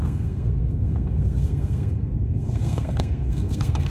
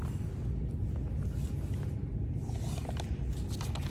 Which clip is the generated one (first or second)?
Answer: first